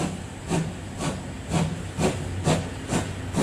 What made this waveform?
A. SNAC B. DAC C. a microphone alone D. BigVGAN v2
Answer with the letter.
C